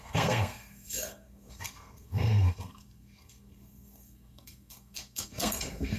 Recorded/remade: remade